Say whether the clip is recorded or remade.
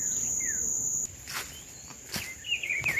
recorded